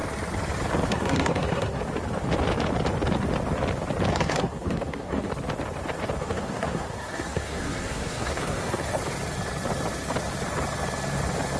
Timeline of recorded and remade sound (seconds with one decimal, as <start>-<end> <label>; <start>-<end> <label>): 0.0-0.9 recorded; 0.9-1.8 remade; 1.8-4.1 recorded; 4.1-5.3 remade; 5.3-6.2 recorded; 6.2-9.0 remade; 9.0-11.6 recorded